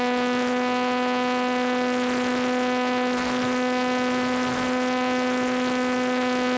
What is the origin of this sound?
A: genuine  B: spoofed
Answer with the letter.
A